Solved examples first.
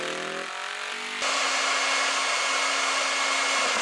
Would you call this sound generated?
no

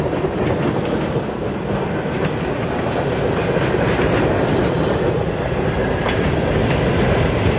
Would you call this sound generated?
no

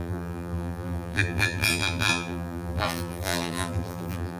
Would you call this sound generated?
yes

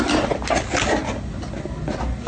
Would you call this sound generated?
no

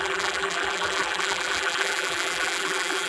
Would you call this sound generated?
yes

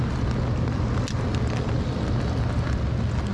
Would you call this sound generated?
no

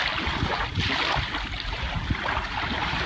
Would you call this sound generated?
no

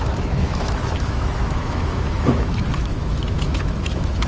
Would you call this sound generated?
yes